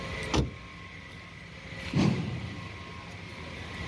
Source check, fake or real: real